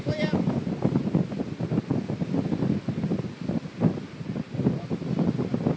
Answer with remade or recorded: recorded